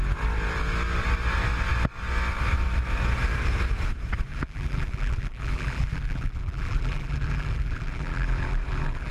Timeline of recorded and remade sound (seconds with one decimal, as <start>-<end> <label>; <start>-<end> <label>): 0.0-4.3 recorded; 4.3-9.1 remade